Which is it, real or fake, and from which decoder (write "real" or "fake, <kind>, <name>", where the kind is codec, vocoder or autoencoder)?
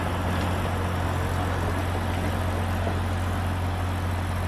real